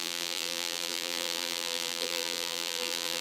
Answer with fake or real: fake